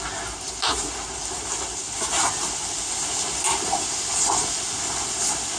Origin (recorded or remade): recorded